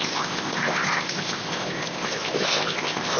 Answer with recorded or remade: remade